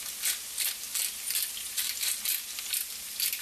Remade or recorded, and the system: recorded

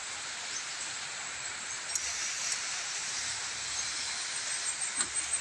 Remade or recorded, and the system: recorded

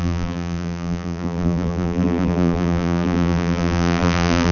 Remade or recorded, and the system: remade, vocoder, BigVGAN v2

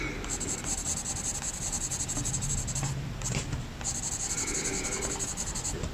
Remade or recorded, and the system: recorded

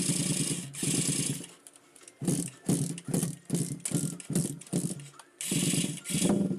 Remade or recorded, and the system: recorded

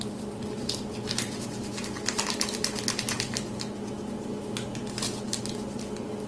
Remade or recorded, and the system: recorded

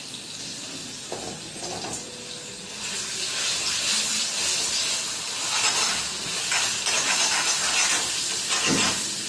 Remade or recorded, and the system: recorded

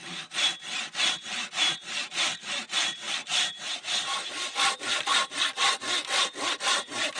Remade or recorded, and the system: recorded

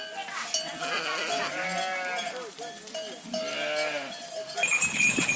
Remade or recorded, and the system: recorded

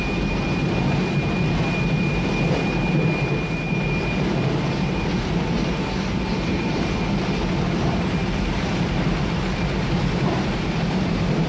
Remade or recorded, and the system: remade, vocoder, BigVGAN v2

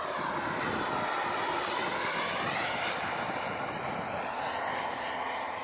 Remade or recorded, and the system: remade, vocoder, BigVGAN v2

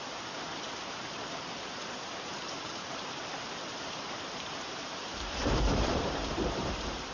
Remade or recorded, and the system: remade, vocoder, BigVGAN v2